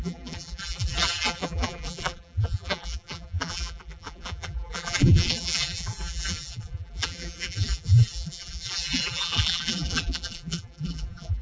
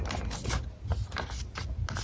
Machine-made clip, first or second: first